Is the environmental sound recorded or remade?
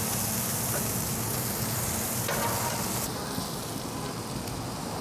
recorded